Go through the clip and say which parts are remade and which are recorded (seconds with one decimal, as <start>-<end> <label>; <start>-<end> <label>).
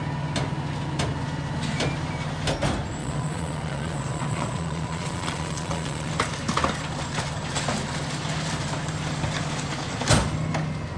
0.0-3.0 recorded; 3.0-6.1 remade; 6.1-11.0 recorded